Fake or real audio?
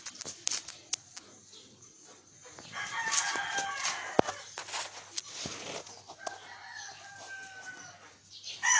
real